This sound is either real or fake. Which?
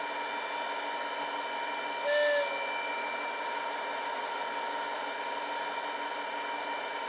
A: real